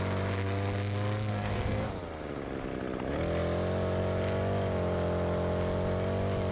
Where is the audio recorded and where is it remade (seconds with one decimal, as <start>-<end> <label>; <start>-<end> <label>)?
0.0-1.3 recorded; 1.3-1.9 remade; 1.9-6.5 recorded